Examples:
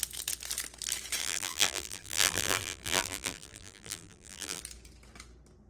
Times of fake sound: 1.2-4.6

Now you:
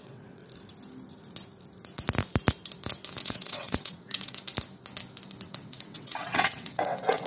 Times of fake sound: 0.0-0.4; 3.2-4.4; 5.4-7.3

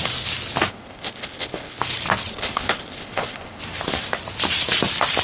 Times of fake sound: 0.7-1.8; 2.3-3.6

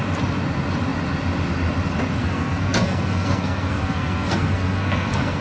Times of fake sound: 2.2-5.4

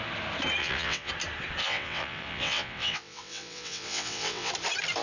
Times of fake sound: 0.6-1.1; 1.6-4.5

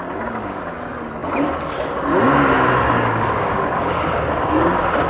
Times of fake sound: none

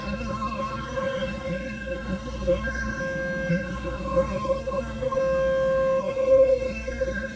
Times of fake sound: 0.0-3.0; 3.5-5.2; 6.0-7.4